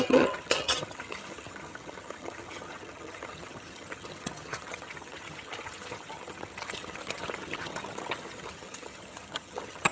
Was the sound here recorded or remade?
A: remade